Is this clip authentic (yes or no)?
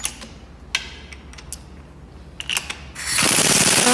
yes